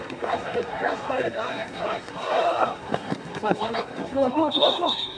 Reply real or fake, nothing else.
fake